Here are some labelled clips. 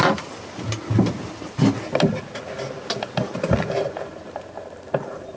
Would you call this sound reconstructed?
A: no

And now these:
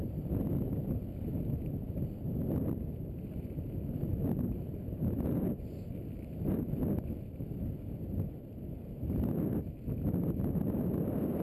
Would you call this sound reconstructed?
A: no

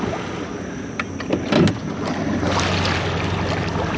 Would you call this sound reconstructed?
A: no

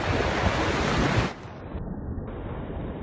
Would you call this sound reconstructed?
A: no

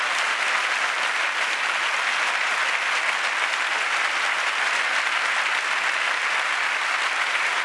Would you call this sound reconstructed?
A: no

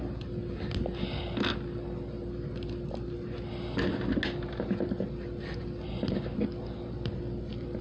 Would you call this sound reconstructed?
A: no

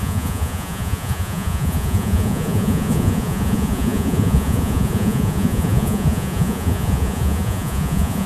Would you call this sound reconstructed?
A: yes